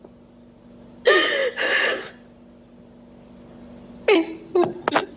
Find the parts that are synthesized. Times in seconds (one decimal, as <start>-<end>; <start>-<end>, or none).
none